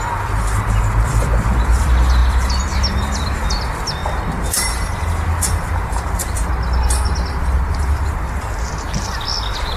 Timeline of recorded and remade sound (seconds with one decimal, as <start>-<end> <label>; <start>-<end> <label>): 0.0-4.0 remade; 4.0-4.6 recorded; 4.6-6.2 remade; 6.2-7.7 recorded; 7.7-9.8 remade